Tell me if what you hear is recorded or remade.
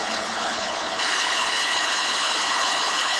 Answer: remade